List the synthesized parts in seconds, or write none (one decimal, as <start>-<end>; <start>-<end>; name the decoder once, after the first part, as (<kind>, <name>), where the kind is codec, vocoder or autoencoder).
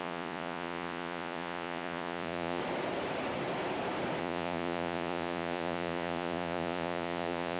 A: 0.0-2.6 (vocoder, Vocos); 4.2-7.6